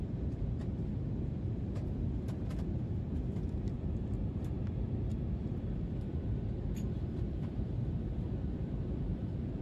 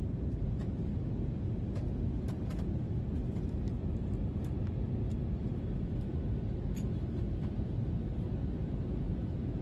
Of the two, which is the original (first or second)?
second